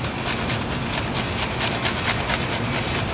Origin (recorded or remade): recorded